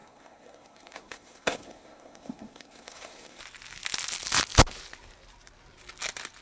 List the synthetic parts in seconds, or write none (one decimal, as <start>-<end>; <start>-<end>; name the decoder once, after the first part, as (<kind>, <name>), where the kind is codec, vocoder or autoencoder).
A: 0.0-3.4 (codec, SNAC)